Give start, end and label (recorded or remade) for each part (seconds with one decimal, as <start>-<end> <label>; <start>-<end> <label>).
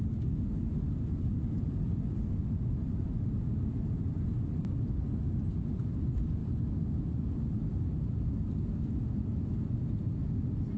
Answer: 0.0-10.8 recorded